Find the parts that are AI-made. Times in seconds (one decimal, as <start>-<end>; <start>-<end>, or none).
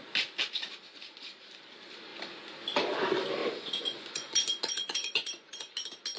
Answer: 3.4-5.7